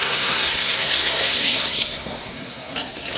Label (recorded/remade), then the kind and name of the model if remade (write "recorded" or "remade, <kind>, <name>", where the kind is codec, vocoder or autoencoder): remade, codec, SNAC